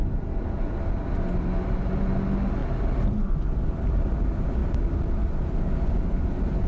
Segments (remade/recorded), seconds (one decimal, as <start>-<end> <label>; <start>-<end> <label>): 0.0-6.7 recorded